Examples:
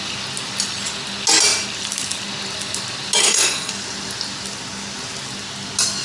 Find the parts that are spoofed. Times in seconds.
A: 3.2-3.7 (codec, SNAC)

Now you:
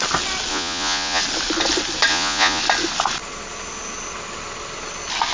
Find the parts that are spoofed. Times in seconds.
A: 0.5-1.2 (vocoder, Vocos); 2.1-2.6

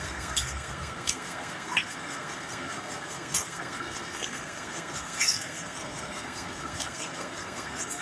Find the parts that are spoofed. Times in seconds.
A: 0.0-8.0 (codec, SNAC)

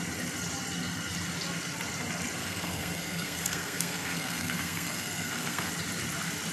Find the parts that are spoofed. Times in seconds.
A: 2.4-5.7 (codec, SNAC)

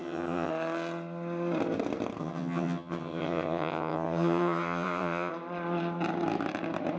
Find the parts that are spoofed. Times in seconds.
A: 0.0-0.5 (vocoder, HiFi-GAN); 2.2-5.3

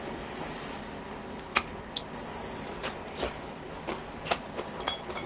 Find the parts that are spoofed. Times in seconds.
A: none

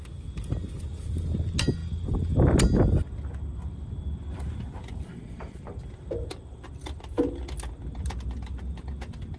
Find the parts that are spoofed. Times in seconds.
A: none

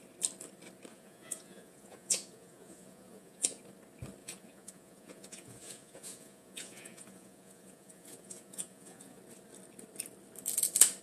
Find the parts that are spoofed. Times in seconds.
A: 0.9-3.6 (vocoder, Vocos); 4.2-9.2